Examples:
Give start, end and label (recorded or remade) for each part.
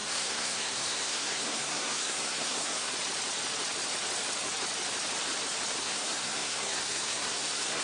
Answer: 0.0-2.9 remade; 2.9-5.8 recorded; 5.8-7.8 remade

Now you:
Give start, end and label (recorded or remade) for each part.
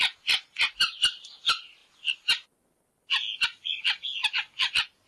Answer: 0.0-5.1 recorded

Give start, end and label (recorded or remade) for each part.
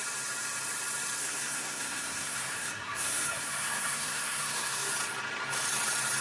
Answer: 0.0-1.2 recorded; 1.2-4.9 remade; 4.9-6.2 recorded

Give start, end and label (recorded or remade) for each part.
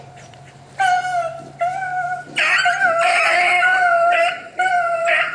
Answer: 0.0-5.3 recorded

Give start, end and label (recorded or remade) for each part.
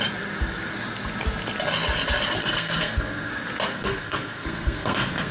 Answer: 0.0-2.4 recorded; 2.4-3.3 remade; 3.3-3.7 recorded; 3.7-5.3 remade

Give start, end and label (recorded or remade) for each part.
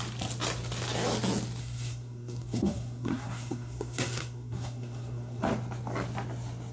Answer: 0.0-1.6 recorded; 1.6-5.4 remade; 5.4-6.7 recorded